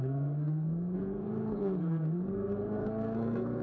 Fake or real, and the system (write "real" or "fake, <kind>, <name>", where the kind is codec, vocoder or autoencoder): fake, codec, SNAC